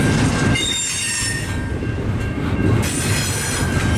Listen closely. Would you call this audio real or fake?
real